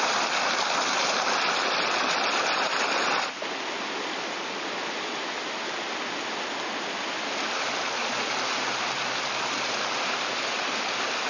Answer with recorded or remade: recorded